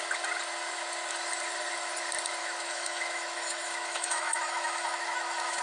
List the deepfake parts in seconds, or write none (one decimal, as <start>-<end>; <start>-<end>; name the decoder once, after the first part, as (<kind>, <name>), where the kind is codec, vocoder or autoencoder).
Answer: 2.4-5.6 (autoencoder, DAC-VAE)